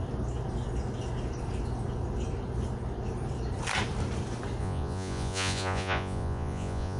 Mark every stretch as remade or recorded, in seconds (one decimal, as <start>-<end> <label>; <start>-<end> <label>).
0.0-4.6 recorded; 4.6-7.0 remade